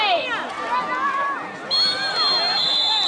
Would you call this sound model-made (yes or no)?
no